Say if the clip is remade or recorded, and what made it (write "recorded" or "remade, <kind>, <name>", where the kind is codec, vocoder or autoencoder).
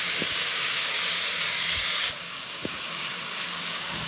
remade, codec, DAC